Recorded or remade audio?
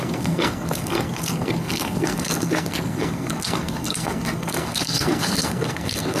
remade